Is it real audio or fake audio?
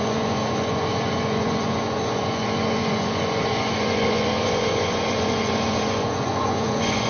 fake